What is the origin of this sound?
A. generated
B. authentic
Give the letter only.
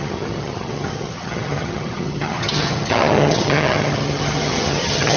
A